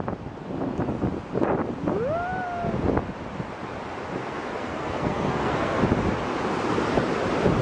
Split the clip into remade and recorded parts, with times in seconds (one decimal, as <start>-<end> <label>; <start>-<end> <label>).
0.0-4.2 recorded; 4.2-5.8 remade; 5.8-7.6 recorded